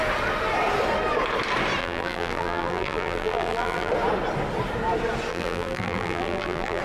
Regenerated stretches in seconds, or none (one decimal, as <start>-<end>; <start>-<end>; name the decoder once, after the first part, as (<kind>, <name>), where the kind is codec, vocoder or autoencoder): 1.8-3.9 (vocoder, BigVGAN v2); 5.3-6.8